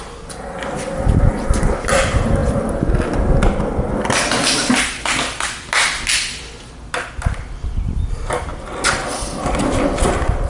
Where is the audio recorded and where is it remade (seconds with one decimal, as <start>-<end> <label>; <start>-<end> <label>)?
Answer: 0.0-10.5 recorded